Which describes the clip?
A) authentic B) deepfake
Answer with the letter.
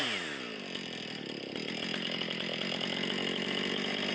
A